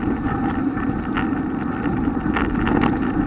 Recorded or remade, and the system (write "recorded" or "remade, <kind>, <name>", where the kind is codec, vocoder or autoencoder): recorded